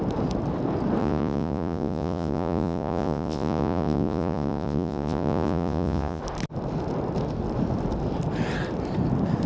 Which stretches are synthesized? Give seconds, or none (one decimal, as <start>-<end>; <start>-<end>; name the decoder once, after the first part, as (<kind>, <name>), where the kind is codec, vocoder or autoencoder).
1.0-6.2 (vocoder, Vocos)